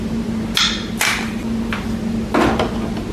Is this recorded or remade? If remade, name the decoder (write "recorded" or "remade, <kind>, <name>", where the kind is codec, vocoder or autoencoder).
recorded